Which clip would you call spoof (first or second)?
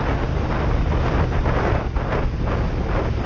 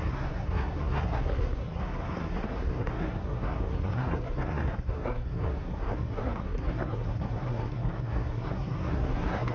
second